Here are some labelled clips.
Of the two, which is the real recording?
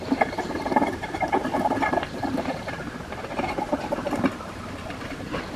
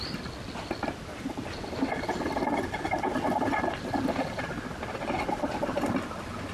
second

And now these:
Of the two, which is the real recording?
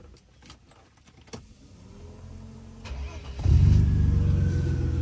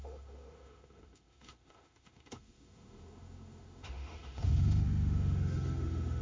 first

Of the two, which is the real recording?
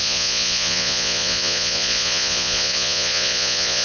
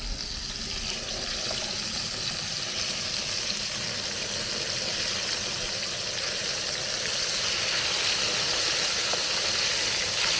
second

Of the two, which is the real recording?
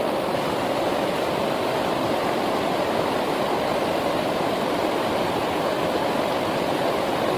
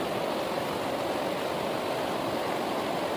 second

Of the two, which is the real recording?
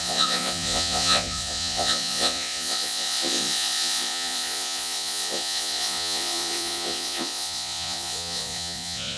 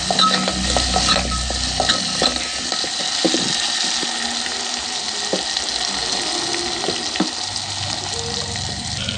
second